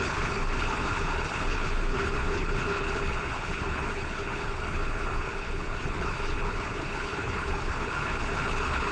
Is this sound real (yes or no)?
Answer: no